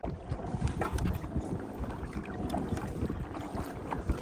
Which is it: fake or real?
fake